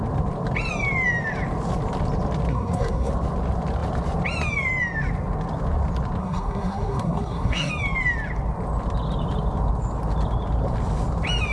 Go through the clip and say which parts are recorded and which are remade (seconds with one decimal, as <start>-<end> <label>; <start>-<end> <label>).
0.0-2.5 recorded; 2.5-3.1 remade; 3.1-6.2 recorded; 6.2-7.7 remade; 7.7-11.5 recorded